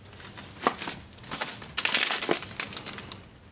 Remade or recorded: recorded